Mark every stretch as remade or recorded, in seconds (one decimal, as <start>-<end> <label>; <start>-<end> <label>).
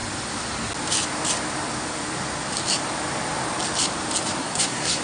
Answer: 0.0-4.4 recorded; 4.4-5.0 remade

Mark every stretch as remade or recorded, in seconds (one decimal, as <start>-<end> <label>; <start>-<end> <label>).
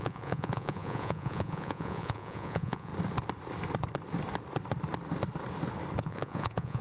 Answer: 0.0-2.9 remade; 2.9-6.0 recorded; 6.0-6.8 remade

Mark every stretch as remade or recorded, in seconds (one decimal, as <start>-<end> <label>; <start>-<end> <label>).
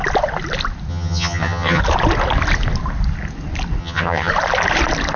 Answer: 0.0-0.9 recorded; 0.9-1.8 remade; 1.8-3.8 recorded; 3.8-4.3 remade; 4.3-5.2 recorded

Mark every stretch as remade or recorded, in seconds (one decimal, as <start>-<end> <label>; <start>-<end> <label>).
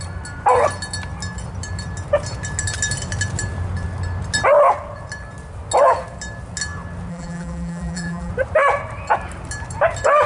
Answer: 0.0-7.1 recorded; 7.1-8.3 remade; 8.3-10.3 recorded